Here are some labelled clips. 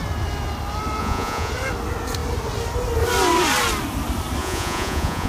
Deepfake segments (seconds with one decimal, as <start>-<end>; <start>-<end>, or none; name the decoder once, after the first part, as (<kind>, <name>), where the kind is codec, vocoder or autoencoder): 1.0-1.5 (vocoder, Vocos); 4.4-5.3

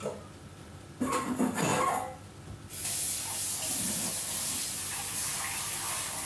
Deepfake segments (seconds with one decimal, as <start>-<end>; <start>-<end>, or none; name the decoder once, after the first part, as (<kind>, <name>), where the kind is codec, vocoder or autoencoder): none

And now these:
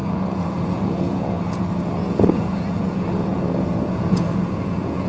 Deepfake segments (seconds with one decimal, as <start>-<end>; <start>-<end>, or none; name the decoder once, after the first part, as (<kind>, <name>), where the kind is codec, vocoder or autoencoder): 0.0-5.1 (vocoder, Vocos)

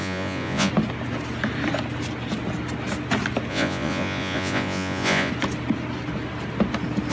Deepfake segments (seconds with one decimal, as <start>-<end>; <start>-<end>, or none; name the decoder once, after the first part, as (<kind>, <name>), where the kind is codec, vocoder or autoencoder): 0.0-0.7 (vocoder, Vocos); 3.5-5.3

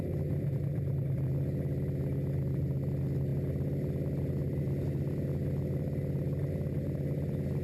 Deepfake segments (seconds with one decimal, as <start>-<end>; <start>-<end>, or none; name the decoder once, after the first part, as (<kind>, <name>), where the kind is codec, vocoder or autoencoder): none